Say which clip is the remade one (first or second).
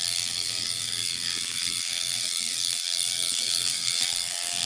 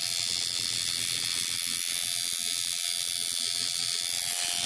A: first